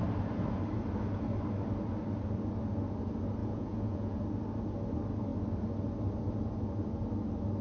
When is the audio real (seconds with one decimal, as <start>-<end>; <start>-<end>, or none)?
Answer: 0.0-3.4; 4.2-7.6